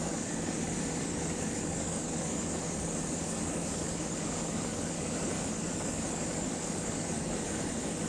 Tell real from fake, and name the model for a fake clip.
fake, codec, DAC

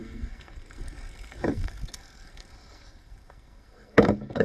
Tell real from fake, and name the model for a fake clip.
fake, codec, SNAC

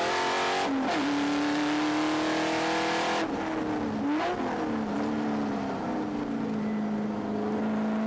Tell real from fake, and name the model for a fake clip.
real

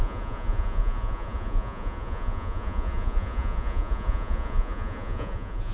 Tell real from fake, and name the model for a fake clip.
fake, vocoder, Vocos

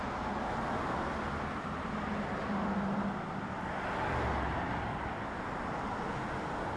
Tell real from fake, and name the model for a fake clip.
real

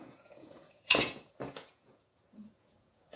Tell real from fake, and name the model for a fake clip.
fake, vocoder, Vocos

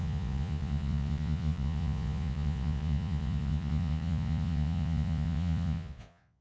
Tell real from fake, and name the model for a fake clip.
fake, vocoder, Vocos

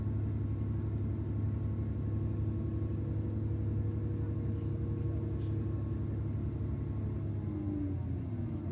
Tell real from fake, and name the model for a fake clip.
real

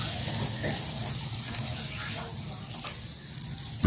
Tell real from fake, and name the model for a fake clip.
real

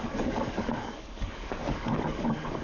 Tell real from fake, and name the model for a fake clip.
fake, codec, DAC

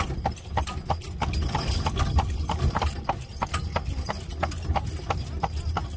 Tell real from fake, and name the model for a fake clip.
real